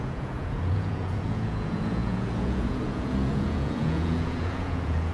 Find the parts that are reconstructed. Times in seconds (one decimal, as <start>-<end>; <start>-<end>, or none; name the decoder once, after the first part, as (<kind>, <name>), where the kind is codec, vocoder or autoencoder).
0.0-5.1 (vocoder, Vocos)